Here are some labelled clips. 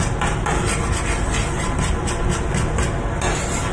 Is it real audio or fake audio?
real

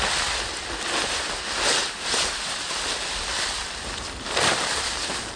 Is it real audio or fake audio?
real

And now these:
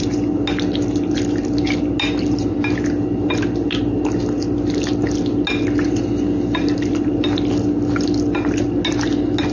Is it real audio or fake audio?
real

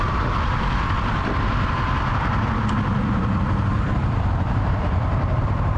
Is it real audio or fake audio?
fake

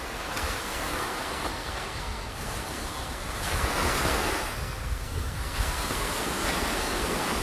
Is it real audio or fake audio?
fake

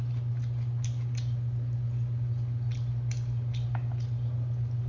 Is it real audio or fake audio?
real